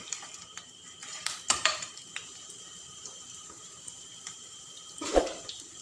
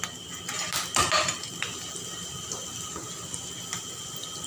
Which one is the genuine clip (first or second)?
second